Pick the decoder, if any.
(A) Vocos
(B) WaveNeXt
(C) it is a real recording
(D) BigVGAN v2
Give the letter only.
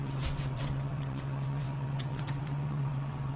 B